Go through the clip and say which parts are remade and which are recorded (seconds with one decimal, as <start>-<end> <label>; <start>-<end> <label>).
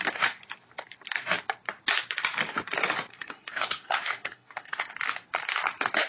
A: 0.0-3.1 recorded; 3.1-4.9 remade; 4.9-6.1 recorded